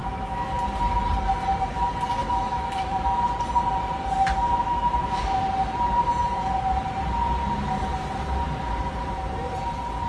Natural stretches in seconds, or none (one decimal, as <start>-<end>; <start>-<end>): 0.5-2.2; 3.2-4.5; 5.4-10.1